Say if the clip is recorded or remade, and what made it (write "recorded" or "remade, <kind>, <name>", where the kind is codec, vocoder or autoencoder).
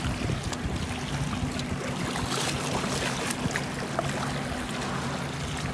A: recorded